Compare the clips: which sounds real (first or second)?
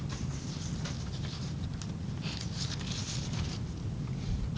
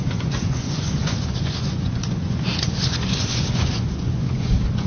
first